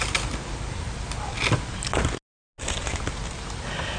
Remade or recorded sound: recorded